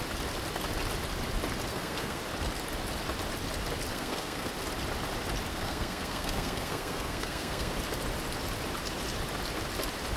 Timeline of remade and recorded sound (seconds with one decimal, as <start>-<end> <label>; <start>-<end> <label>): 0.0-1.7 recorded; 1.7-2.2 remade; 2.2-3.9 recorded; 3.9-4.5 remade; 4.5-5.5 recorded; 5.5-7.7 remade; 7.7-10.2 recorded